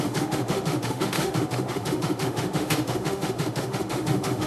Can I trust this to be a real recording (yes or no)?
no